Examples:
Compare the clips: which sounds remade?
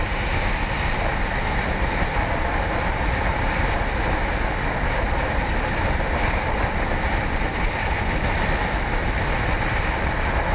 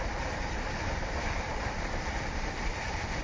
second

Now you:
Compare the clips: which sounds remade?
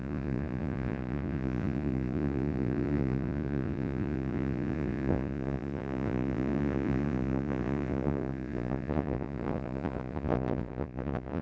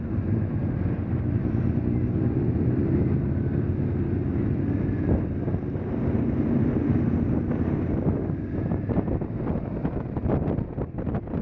first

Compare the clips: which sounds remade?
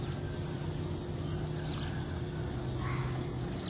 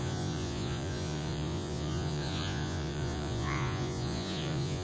second